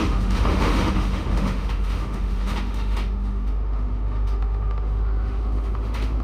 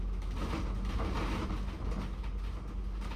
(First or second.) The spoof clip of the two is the first